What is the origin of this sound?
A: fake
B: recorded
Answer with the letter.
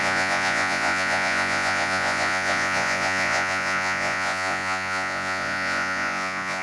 A